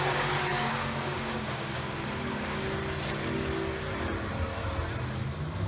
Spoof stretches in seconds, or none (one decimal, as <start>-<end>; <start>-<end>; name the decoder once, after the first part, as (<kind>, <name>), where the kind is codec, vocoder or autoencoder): 0.0-2.8 (codec, DAC)